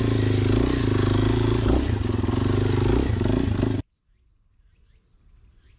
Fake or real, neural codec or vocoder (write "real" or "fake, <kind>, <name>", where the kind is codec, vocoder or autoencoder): real